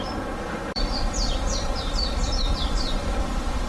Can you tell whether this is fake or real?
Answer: fake